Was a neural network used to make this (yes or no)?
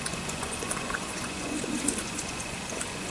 yes